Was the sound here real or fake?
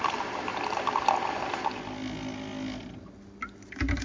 real